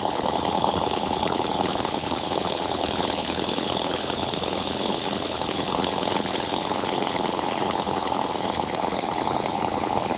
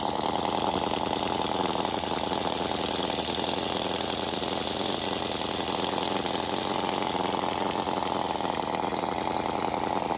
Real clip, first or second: second